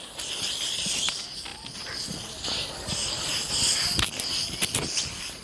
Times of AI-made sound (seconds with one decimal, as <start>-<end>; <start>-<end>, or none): none